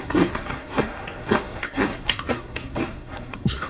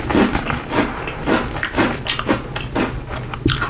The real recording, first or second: second